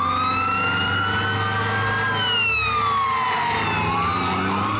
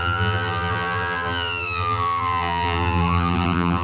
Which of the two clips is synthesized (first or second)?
second